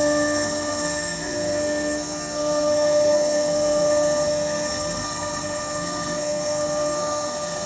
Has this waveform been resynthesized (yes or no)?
yes